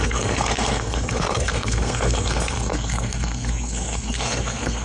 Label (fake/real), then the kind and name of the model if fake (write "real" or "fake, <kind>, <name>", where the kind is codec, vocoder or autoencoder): fake, codec, SNAC